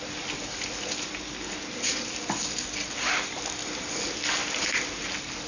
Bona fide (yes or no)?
yes